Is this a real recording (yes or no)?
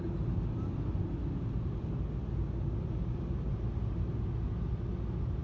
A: yes